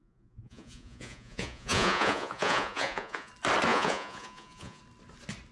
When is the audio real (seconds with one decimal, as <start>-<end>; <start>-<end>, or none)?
3.3-3.7; 4.8-5.5